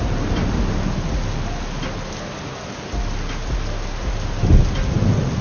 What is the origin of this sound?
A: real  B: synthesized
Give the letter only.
A